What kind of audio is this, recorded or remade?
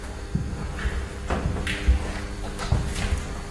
recorded